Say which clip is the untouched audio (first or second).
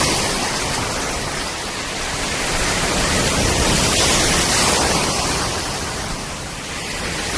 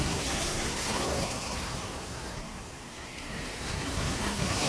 first